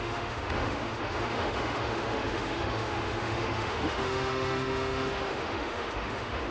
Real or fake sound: fake